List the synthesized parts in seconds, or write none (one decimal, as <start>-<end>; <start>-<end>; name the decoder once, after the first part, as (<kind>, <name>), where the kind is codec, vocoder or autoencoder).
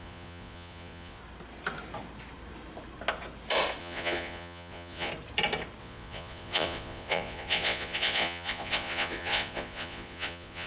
0.0-1.2 (vocoder, Vocos); 3.8-5.1; 5.8-10.7